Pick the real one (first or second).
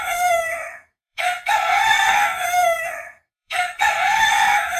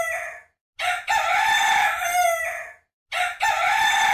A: second